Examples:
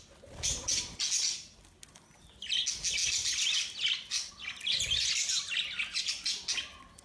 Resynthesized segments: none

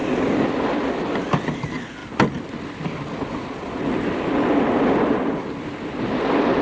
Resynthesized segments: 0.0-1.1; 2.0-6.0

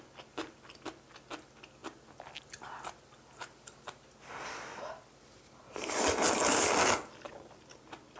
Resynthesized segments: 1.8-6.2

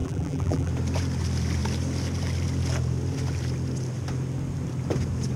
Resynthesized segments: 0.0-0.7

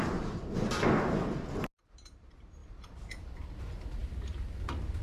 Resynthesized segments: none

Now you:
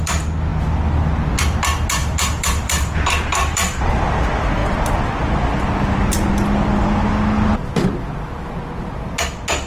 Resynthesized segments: 2.0-4.0